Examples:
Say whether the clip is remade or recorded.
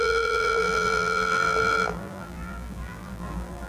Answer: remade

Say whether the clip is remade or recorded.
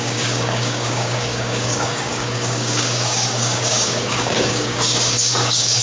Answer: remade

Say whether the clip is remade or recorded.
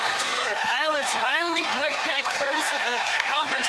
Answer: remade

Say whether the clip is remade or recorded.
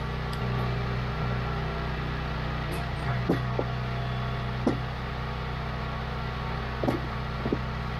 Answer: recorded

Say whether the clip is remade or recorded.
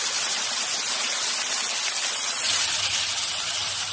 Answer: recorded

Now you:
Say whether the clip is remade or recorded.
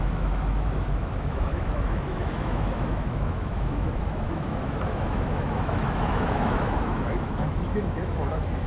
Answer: remade